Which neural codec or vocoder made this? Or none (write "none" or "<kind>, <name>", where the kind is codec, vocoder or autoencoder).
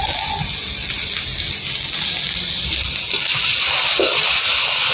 none